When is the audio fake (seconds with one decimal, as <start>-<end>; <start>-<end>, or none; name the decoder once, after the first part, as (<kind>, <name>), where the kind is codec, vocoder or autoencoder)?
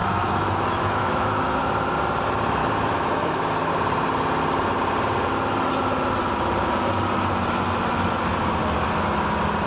0.0-1.6 (autoencoder, DAC-VAE); 2.6-3.7